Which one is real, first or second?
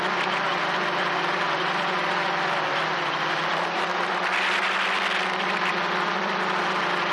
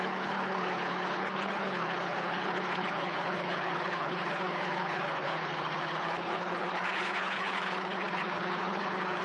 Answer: first